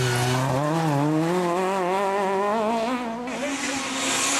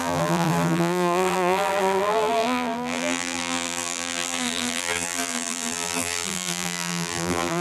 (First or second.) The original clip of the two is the first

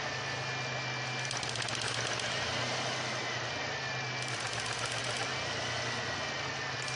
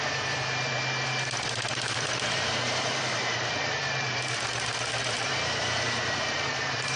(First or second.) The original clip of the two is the first